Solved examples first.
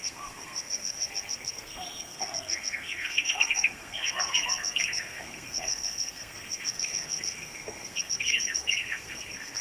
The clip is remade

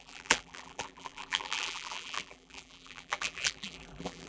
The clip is remade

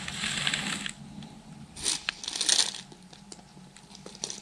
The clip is recorded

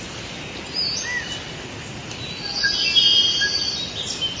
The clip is recorded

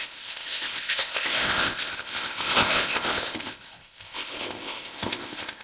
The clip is remade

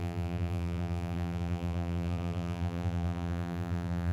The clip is remade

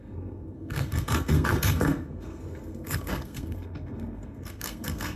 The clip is remade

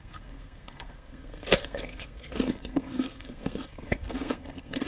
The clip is remade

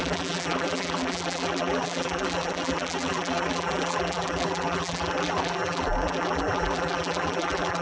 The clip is remade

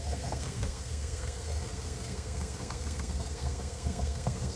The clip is remade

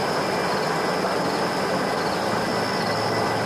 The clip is recorded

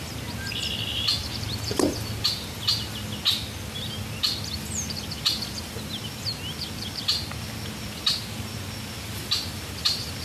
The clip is recorded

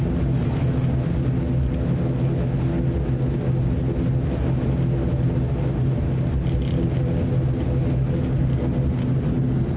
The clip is recorded